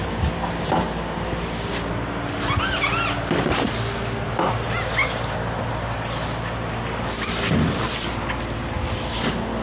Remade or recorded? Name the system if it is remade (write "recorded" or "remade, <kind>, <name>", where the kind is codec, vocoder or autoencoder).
recorded